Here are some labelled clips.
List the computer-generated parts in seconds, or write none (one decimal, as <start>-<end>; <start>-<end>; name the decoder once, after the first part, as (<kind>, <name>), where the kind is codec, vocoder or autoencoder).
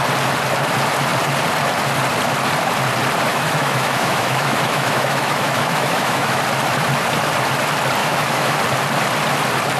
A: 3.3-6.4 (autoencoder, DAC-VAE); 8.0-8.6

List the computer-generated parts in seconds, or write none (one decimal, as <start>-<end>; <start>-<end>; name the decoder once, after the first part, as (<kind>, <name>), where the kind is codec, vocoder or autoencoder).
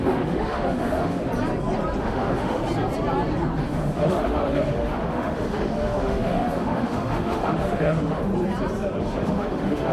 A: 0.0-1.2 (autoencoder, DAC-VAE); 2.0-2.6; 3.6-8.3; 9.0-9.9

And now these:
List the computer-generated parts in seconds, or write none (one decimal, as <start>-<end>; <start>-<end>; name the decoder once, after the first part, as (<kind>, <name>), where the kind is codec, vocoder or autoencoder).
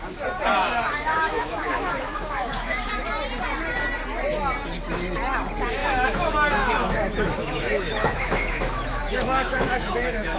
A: 1.1-2.9 (autoencoder, DAC-VAE); 5.8-10.4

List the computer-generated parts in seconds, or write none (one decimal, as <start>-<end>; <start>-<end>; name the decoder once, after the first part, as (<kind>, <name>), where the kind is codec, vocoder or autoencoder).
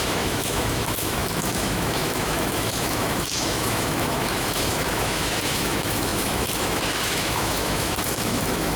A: 0.0-8.8 (autoencoder, DAC-VAE)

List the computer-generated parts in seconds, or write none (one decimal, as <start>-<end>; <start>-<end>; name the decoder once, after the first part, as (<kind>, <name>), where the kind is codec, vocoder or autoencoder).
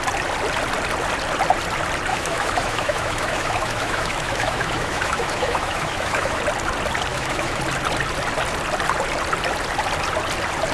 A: 2.1-6.4 (autoencoder, DAC-VAE); 7.1-7.6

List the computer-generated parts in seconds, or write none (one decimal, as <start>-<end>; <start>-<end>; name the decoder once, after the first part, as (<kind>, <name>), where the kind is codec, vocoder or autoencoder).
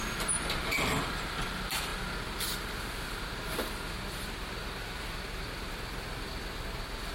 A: none